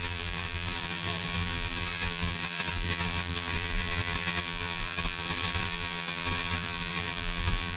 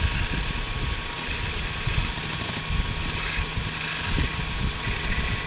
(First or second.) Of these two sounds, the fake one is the first